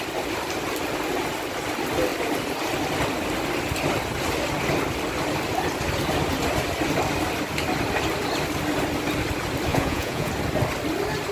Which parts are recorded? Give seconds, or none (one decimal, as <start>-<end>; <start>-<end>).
0.0-9.7; 10.3-11.3